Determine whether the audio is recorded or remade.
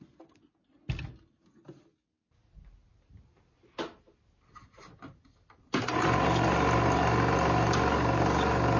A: recorded